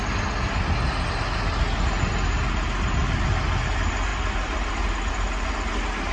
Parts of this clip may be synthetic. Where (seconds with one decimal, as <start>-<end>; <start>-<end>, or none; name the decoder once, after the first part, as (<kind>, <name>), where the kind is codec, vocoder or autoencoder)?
4.1-5.5 (vocoder, BigVGAN v2)